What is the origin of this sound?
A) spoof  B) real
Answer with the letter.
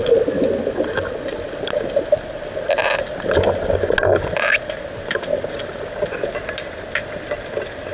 B